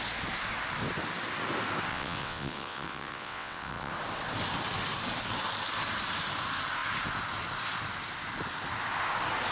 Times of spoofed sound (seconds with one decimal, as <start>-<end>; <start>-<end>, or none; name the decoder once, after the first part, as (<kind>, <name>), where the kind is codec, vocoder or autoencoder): 1.9-3.9 (vocoder, WaveNeXt)